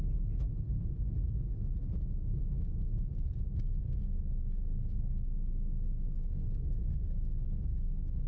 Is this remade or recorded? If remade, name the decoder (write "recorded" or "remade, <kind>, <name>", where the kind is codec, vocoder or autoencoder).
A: recorded